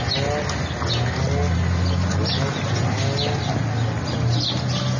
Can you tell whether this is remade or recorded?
recorded